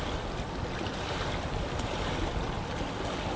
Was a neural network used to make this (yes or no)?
no